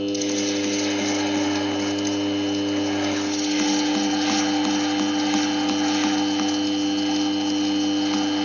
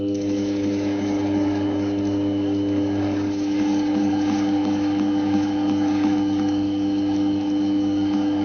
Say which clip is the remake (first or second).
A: second